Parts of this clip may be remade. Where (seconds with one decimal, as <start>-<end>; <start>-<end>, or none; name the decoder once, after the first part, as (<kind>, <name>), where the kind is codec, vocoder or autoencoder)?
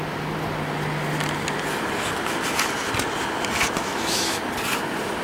3.8-4.4 (autoencoder, DAC-VAE)